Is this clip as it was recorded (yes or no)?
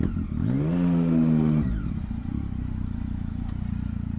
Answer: yes